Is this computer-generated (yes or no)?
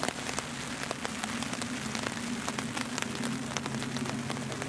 no